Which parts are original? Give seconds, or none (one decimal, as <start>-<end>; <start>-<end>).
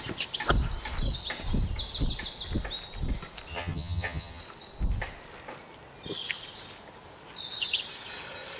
0.0-3.5; 4.4-8.6